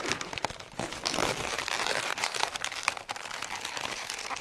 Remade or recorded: remade